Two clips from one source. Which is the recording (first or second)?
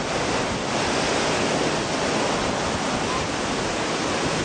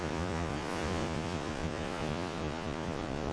first